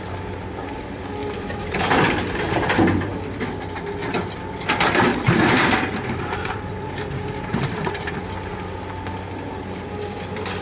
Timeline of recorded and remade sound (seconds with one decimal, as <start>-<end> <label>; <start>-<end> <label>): 0.0-1.2 recorded; 1.2-1.8 remade; 1.8-5.1 recorded; 5.1-8.2 remade; 8.2-10.6 recorded